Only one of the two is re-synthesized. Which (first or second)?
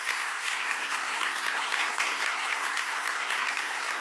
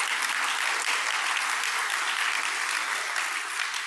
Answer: first